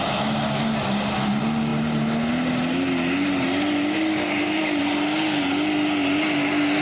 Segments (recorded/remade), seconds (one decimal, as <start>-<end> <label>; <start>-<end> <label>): 0.0-6.8 recorded